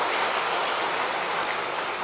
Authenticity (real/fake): real